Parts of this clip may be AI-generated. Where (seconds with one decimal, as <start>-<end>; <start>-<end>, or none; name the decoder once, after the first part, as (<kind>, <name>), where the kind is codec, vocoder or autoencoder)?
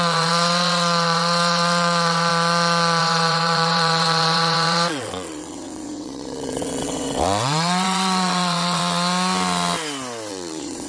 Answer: 0.0-2.3 (vocoder, WaveNeXt); 3.0-8.8; 10.3-10.9